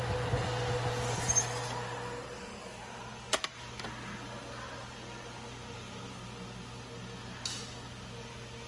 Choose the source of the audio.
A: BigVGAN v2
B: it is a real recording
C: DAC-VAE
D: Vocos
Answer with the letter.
B